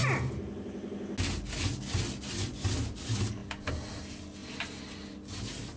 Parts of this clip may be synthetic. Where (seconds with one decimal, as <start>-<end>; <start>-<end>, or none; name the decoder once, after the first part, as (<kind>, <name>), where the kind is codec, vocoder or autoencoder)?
none